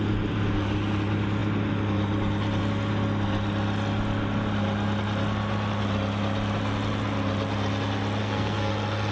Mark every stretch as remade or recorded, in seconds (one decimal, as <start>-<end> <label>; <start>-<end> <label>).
0.0-8.2 recorded; 8.2-8.7 remade; 8.7-9.1 recorded

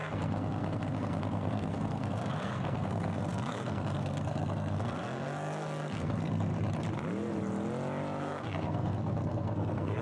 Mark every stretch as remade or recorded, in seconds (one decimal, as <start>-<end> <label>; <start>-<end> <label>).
0.0-6.5 remade; 6.5-8.2 recorded; 8.2-10.0 remade